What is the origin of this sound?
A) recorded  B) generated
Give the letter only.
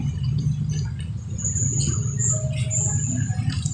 A